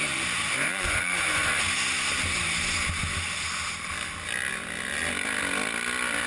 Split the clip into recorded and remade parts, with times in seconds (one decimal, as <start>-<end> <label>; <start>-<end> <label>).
0.0-0.6 recorded; 0.6-1.6 remade; 1.6-6.3 recorded